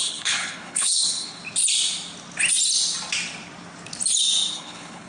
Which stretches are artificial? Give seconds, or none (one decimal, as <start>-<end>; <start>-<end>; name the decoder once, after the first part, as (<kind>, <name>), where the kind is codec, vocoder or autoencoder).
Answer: 0.0-1.4 (codec, HILCodec); 4.5-5.1